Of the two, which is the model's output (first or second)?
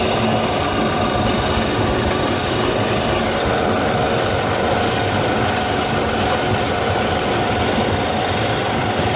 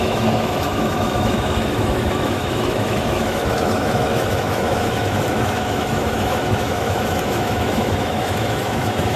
second